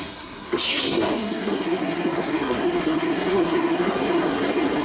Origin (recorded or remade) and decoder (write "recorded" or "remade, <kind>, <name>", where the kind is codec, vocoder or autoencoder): remade, codec, SNAC